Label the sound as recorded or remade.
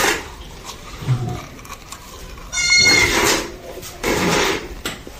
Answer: remade